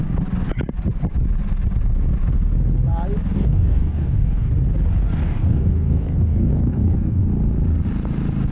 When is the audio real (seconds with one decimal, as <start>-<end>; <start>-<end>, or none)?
0.0-3.3; 4.5-5.2; 7.2-8.5